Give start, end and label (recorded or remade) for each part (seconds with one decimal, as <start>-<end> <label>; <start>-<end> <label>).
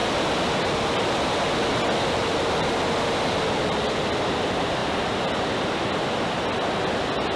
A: 0.0-7.4 recorded